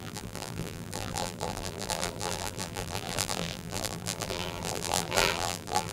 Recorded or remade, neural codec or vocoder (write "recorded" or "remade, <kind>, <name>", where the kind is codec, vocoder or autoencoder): remade, vocoder, BigVGAN v2